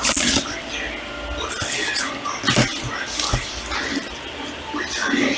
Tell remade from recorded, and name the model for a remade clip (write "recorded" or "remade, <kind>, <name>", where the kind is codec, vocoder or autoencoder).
recorded